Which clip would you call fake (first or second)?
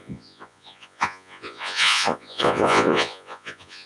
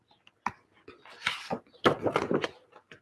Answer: first